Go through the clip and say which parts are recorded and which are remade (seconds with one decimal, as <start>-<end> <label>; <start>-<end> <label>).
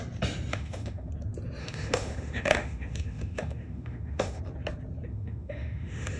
0.0-0.5 recorded; 0.5-1.1 remade; 1.1-1.6 recorded; 1.6-4.4 remade; 4.4-5.1 recorded; 5.1-6.2 remade